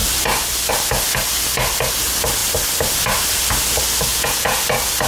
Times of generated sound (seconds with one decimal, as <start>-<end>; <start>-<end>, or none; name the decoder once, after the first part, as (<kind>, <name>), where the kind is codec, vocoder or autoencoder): 4.1-4.6 (vocoder, Vocos)